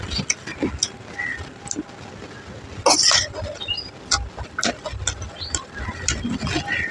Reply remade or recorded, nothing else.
recorded